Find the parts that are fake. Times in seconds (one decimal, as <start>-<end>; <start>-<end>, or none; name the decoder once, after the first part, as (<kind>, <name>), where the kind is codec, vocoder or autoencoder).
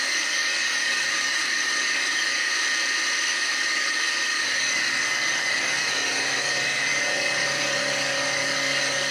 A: 0.0-2.5 (codec, DAC); 3.2-9.1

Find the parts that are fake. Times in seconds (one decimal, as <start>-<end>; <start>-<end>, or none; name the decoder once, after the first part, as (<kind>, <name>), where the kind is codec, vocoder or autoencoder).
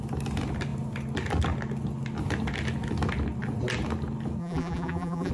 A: 4.4-5.3 (vocoder, BigVGAN v2)